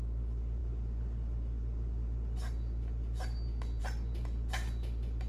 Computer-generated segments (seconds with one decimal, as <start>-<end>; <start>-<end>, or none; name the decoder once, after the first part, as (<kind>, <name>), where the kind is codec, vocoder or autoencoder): none